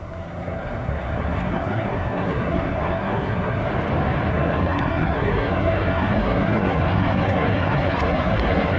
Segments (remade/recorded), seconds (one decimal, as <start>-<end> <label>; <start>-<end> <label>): 0.0-3.7 remade; 3.7-4.3 recorded; 4.3-8.8 remade